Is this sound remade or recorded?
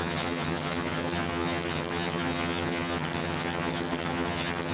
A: remade